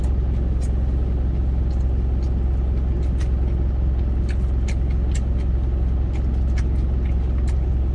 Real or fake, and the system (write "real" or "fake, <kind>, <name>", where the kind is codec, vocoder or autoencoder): real